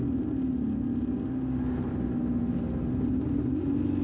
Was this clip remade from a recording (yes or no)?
no